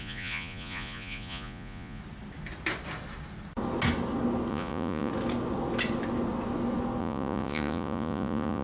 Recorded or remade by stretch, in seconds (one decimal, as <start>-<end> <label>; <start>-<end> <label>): 0.0-2.0 remade; 2.0-4.5 recorded; 4.5-5.1 remade; 5.1-7.0 recorded; 7.0-8.6 remade